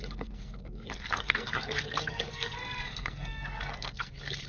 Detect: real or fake fake